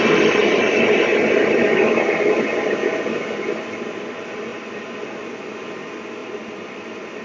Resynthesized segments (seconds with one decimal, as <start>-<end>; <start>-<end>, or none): 4.5-5.3; 6.2-7.2